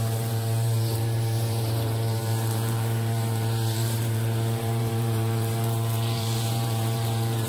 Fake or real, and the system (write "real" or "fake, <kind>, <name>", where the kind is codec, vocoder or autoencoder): fake, vocoder, BigVGAN v2